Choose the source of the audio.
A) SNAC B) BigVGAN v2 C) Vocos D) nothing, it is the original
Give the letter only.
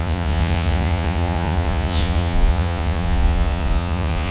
C